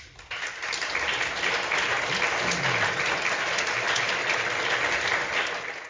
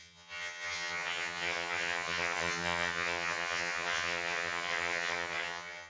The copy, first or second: second